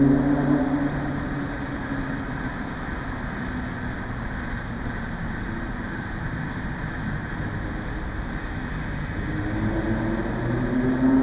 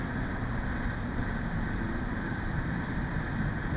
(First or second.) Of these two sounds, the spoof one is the second